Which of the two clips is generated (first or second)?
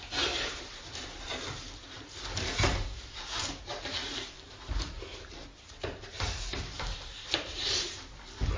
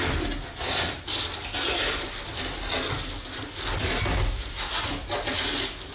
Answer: first